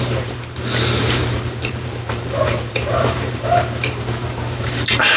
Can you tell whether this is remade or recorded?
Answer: remade